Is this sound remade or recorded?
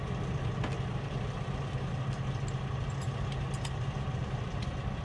recorded